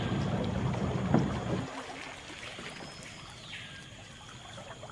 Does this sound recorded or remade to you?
recorded